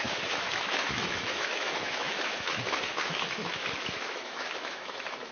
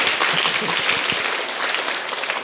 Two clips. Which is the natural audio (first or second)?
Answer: second